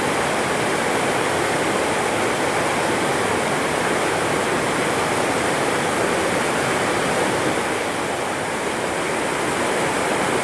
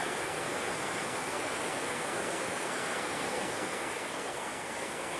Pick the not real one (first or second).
second